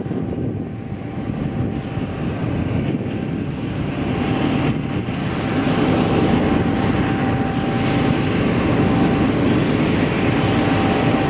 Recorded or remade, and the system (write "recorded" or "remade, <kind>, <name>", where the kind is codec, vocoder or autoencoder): recorded